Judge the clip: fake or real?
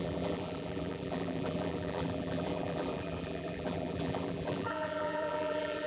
fake